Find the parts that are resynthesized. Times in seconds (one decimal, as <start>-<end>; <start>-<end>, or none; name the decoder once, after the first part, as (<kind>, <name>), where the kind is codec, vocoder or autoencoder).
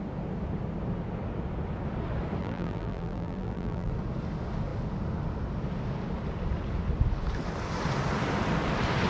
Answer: 2.4-3.9 (vocoder, BigVGAN v2)